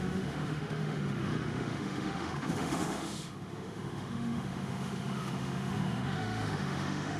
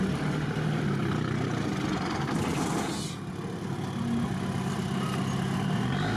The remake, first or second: first